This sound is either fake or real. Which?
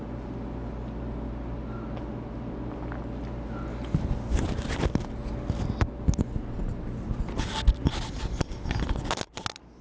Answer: real